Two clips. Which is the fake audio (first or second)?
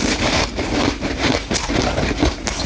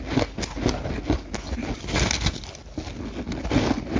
first